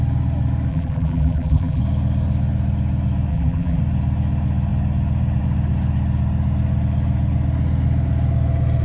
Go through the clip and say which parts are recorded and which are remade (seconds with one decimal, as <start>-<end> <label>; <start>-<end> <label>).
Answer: 0.0-0.7 recorded; 0.7-1.8 remade; 1.8-3.3 recorded; 3.3-3.8 remade; 3.8-8.8 recorded

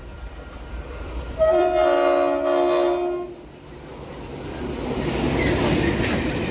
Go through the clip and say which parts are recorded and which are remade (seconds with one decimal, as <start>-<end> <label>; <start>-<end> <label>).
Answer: 0.0-1.8 remade; 1.8-5.7 recorded; 5.7-6.5 remade

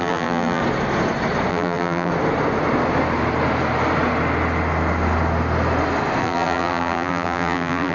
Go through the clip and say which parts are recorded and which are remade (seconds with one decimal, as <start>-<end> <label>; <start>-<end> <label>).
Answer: 0.0-0.6 remade; 0.6-1.5 recorded; 1.5-2.1 remade; 2.1-6.2 recorded; 6.2-7.9 remade